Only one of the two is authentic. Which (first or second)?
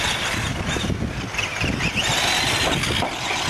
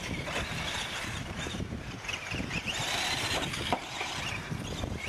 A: first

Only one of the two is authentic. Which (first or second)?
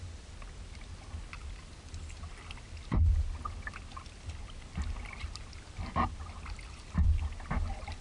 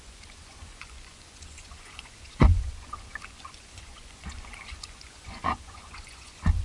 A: first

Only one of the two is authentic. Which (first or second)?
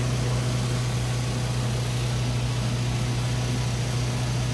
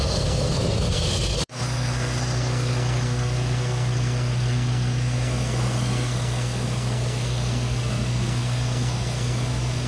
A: first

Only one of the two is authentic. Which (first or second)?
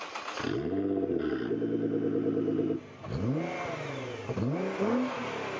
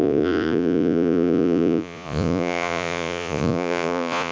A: first